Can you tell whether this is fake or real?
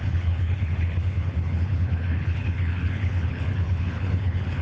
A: fake